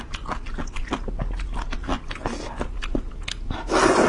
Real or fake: real